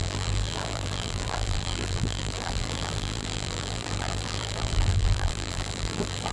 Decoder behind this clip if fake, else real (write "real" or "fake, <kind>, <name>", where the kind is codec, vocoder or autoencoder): fake, vocoder, BigVGAN v2